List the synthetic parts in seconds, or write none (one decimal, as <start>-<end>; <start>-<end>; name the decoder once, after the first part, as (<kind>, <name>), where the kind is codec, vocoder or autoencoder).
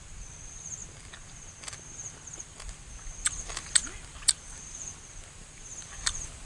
none